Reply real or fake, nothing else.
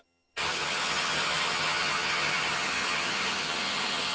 fake